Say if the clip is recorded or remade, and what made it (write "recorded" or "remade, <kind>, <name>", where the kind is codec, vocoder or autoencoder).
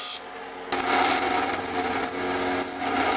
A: recorded